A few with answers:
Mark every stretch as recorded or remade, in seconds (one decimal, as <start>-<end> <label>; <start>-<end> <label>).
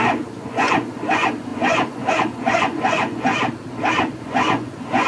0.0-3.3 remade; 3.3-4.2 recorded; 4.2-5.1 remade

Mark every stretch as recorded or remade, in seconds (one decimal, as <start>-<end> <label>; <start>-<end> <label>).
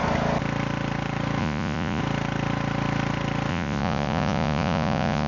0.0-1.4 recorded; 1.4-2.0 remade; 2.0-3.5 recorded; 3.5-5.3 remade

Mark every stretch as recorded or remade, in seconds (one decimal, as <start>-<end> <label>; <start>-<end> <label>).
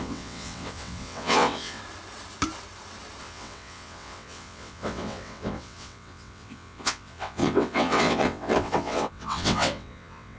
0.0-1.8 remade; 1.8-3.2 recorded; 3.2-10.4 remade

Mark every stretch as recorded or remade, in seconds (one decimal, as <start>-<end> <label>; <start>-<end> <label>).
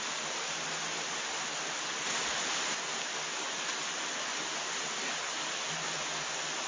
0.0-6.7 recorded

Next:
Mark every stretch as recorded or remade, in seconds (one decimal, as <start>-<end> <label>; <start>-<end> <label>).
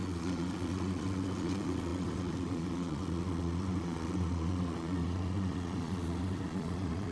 0.0-7.1 remade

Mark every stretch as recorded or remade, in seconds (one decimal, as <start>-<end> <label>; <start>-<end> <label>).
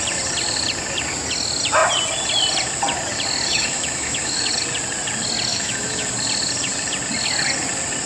0.0-3.5 recorded; 3.5-4.5 remade; 4.5-5.5 recorded; 5.5-6.1 remade; 6.1-8.1 recorded